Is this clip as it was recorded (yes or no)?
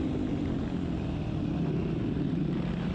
yes